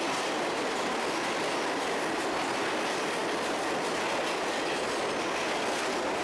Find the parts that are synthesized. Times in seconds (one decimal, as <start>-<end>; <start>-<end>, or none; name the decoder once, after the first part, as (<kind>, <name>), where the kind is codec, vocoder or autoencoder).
none